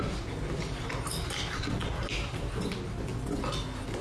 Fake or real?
real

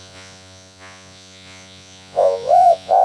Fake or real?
fake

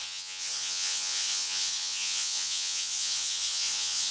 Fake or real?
fake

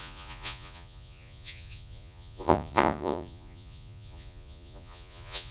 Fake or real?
fake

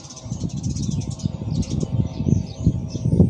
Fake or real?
real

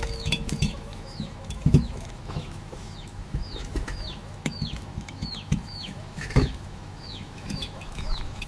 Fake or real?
fake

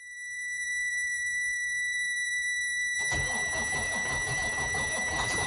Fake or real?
fake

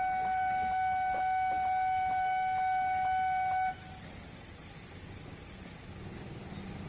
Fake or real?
real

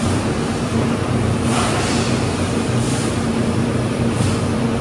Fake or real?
fake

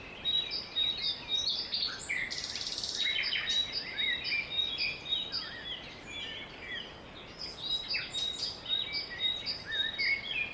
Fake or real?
real